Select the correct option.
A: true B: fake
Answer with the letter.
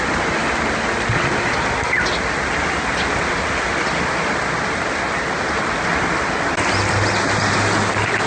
A